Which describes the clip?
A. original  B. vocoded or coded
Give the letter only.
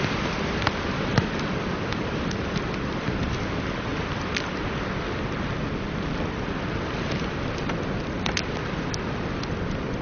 A